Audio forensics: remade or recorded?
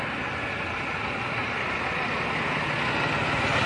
recorded